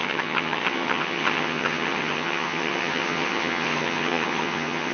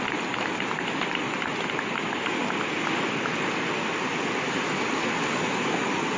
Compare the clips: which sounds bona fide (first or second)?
second